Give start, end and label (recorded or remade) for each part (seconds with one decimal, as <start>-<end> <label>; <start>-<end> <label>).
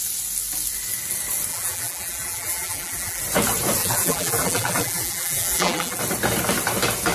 0.0-1.5 recorded; 1.5-3.2 remade; 3.2-3.8 recorded; 3.8-6.0 remade; 6.0-7.1 recorded